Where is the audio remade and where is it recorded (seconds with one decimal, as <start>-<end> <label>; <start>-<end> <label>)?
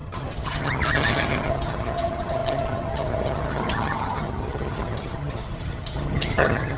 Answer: 0.0-6.8 remade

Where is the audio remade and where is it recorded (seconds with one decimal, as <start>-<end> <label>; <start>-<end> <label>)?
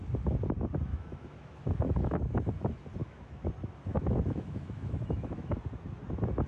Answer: 0.0-0.9 recorded; 0.9-2.5 remade; 2.5-3.0 recorded; 3.0-3.5 remade; 3.5-3.9 recorded; 3.9-5.5 remade; 5.5-6.5 recorded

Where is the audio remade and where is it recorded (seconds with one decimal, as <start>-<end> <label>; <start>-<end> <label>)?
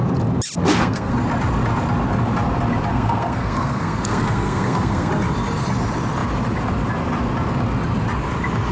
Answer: 0.0-0.6 recorded; 0.6-1.1 remade; 1.1-2.9 recorded; 2.9-5.1 remade; 5.1-8.7 recorded